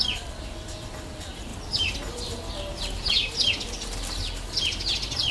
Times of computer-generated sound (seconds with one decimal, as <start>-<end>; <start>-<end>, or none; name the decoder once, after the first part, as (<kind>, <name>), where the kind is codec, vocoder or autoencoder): none